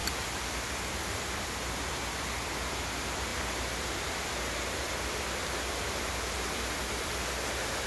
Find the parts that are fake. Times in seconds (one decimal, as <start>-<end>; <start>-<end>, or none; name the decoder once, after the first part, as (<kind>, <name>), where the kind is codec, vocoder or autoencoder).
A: 0.0-7.9 (vocoder, BigVGAN v2)

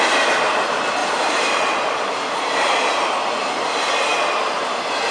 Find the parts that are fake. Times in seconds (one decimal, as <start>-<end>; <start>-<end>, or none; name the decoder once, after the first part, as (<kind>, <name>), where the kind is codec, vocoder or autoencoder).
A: 1.0-1.6 (vocoder, BigVGAN v2)

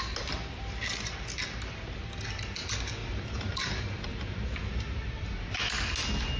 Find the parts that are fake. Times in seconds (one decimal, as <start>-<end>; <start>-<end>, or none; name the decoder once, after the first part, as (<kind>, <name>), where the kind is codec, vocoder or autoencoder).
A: 3.0-5.5 (vocoder, BigVGAN v2)

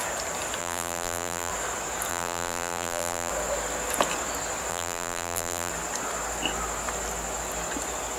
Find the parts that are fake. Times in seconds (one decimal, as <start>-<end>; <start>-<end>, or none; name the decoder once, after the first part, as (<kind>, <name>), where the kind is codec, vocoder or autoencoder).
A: 0.6-1.5 (vocoder, BigVGAN v2); 2.1-3.3; 4.7-5.7

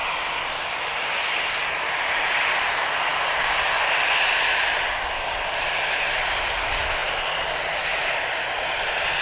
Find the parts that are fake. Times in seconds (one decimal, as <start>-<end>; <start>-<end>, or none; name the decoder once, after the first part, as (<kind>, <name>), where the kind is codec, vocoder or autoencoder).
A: none

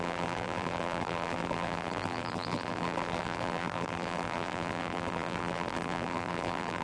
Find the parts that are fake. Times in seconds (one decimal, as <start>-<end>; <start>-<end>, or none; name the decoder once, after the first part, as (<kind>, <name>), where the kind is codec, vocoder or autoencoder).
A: 0.0-6.8 (vocoder, BigVGAN v2)